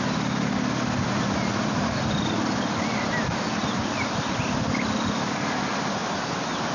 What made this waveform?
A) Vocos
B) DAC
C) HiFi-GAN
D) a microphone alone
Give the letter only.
D